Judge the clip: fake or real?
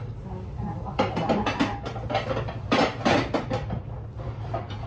real